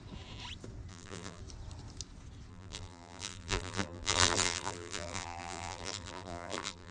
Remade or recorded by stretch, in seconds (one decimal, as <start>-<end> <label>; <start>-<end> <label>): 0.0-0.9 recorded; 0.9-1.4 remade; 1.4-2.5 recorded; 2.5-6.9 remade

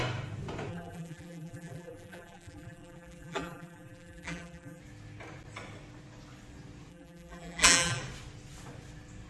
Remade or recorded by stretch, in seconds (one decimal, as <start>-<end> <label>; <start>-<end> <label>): 0.0-0.7 recorded; 0.7-4.8 remade; 4.8-6.9 recorded; 6.9-8.0 remade; 8.0-9.3 recorded

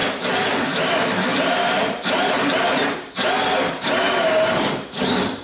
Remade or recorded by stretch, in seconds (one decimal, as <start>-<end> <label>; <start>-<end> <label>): 0.0-1.3 recorded; 1.3-3.1 remade; 3.1-5.4 recorded

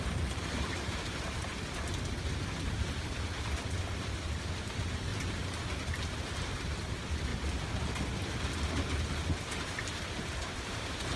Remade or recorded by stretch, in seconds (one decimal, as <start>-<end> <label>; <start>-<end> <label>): 0.0-1.5 remade; 1.5-2.3 recorded; 2.3-5.1 remade; 5.1-5.9 recorded; 5.9-7.3 remade; 7.3-9.3 recorded; 9.3-11.2 remade

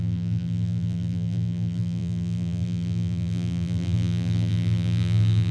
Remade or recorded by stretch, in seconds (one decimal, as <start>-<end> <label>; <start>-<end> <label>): 0.0-5.5 remade